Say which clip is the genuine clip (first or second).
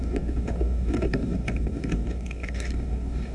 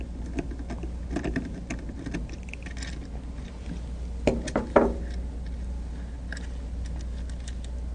second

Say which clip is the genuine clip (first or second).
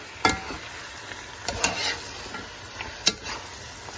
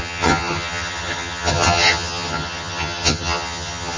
first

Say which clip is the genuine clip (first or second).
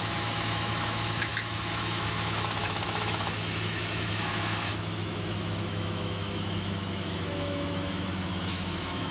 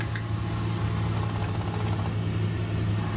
second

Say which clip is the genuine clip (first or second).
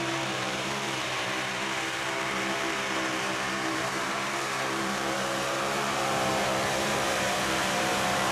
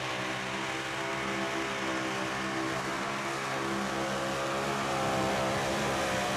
second